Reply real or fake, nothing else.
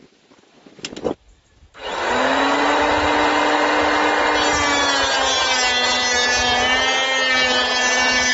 real